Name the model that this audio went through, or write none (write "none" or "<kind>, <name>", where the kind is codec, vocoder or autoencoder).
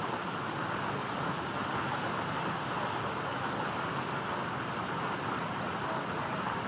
none